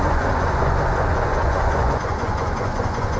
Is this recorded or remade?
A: remade